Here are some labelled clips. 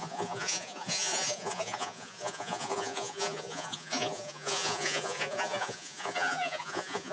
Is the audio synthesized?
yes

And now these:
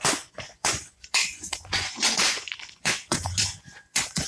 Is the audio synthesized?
yes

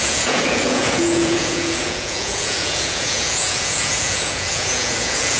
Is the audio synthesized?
yes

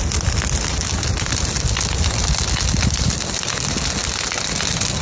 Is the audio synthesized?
no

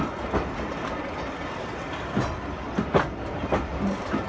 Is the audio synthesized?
no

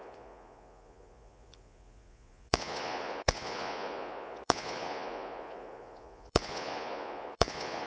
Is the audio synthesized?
yes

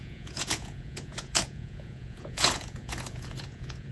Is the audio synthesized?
yes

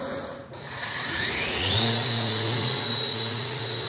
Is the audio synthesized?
yes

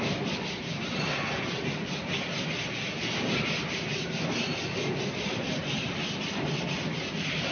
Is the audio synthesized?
no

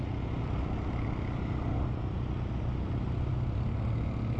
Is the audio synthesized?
no